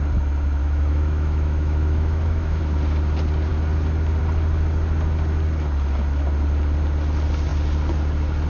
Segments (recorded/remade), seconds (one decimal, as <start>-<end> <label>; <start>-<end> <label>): 0.0-0.6 recorded; 0.6-2.6 remade; 2.6-8.5 recorded